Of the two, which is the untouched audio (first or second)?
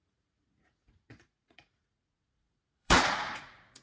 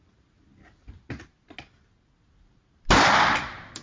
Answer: second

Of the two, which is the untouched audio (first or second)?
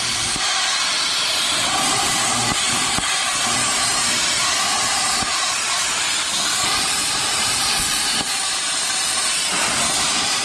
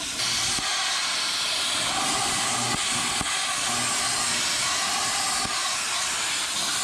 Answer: second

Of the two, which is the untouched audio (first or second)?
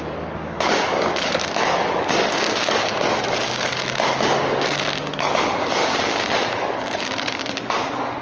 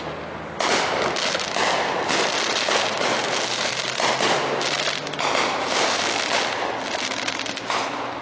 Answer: second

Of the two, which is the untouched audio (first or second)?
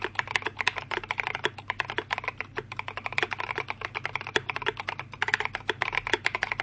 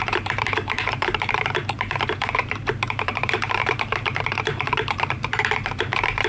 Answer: first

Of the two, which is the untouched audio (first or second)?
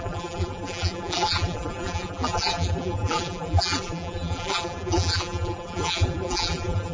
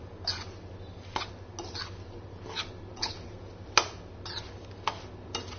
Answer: second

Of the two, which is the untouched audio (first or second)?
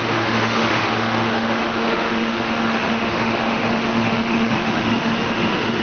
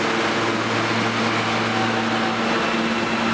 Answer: second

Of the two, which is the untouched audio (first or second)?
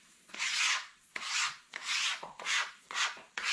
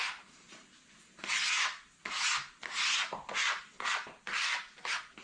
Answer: second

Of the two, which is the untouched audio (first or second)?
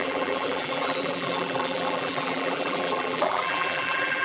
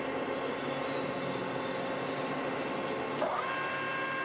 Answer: second